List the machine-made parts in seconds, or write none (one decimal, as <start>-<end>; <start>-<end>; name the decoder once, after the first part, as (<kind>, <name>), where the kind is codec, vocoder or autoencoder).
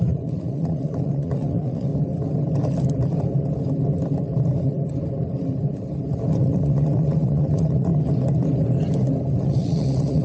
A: 0.0-1.9 (vocoder, Vocos); 6.3-7.9; 9.4-10.2